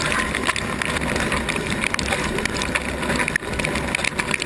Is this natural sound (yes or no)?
yes